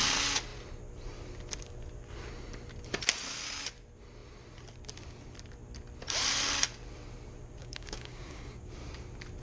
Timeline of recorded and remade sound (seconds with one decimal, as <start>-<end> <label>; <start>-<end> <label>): 0.0-7.6 recorded; 7.6-8.7 remade; 8.7-9.4 recorded